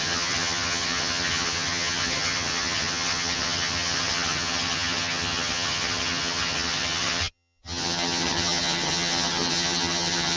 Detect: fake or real fake